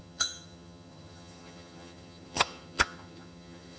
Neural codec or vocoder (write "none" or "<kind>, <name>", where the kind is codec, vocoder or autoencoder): vocoder, HiFi-GAN